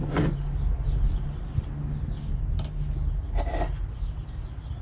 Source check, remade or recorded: recorded